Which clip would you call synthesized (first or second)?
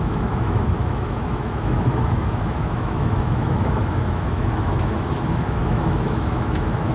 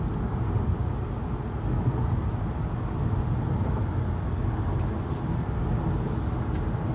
first